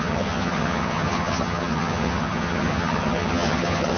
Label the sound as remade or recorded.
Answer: remade